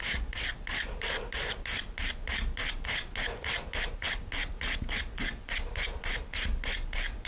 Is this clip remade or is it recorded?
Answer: recorded